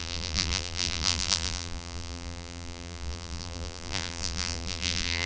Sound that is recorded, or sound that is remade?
remade